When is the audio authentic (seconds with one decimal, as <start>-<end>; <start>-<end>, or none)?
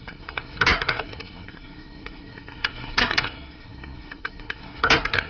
none